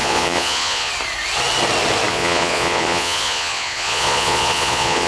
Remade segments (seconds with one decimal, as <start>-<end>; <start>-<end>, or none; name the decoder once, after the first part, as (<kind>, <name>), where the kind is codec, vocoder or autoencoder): 0.0-0.9 (vocoder, Vocos); 2.1-5.1